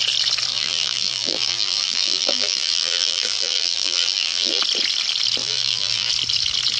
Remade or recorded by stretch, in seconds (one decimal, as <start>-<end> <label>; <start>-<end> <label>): 0.0-0.5 recorded; 0.5-4.6 remade; 4.6-5.4 recorded; 5.4-6.1 remade; 6.1-6.8 recorded